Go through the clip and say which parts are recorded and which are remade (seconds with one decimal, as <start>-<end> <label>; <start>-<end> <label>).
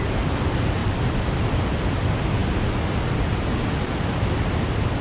0.0-5.0 recorded